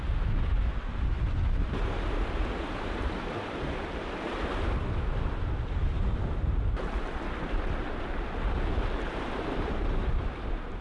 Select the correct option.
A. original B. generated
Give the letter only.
A